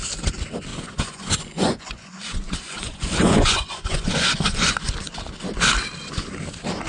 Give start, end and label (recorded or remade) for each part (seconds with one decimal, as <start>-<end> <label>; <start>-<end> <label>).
0.0-0.7 recorded; 0.7-4.8 remade; 4.8-6.9 recorded